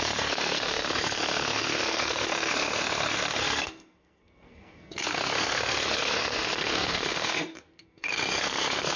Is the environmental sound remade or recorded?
remade